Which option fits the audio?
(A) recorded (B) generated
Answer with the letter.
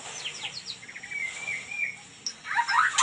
A